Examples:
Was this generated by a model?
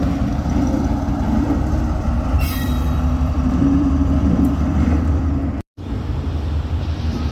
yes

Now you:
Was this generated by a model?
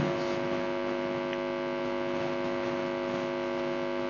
no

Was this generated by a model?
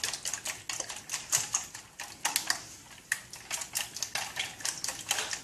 no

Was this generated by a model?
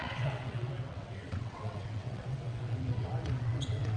yes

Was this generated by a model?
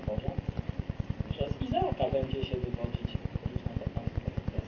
no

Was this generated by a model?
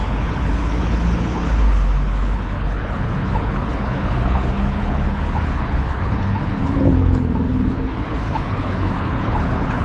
yes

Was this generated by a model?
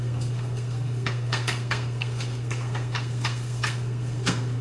yes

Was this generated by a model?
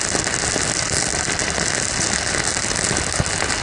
no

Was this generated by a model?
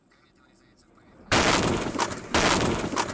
yes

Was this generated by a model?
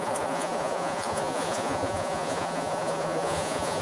yes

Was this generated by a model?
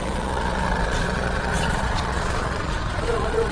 yes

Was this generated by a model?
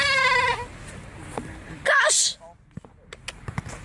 no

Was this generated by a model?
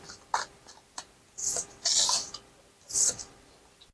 no